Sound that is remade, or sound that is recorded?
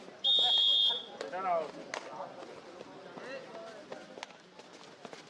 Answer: recorded